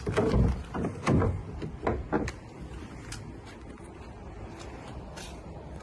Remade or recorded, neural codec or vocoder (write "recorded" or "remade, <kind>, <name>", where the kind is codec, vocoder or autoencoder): recorded